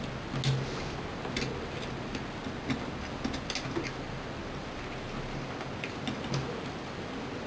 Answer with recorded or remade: recorded